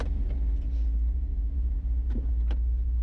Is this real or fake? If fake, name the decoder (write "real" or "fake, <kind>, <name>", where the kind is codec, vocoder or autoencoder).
real